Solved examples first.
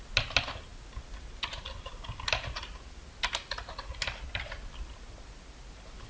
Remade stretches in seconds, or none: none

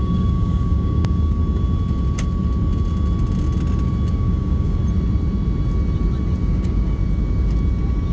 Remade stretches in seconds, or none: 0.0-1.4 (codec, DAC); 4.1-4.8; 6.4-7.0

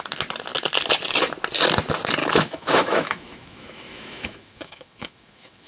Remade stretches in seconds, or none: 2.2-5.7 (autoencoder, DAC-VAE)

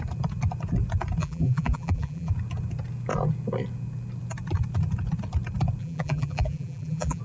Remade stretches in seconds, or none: 1.2-2.3 (vocoder, BigVGAN v2); 5.8-7.2

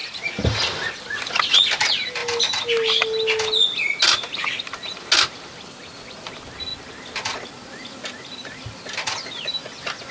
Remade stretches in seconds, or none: 0.0-0.6 (vocoder, BigVGAN v2)

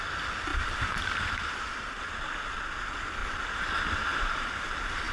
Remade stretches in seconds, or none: 0.5-2.0 (vocoder, BigVGAN v2); 3.2-4.5

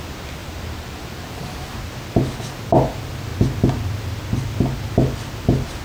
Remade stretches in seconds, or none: 0.4-1.8 (vocoder, BigVGAN v2)

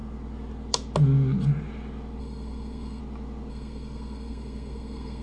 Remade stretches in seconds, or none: 2.2-3.0 (codec, SNAC); 3.5-5.2